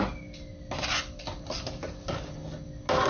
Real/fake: real